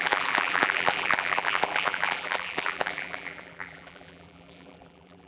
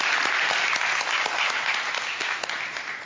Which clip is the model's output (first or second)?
first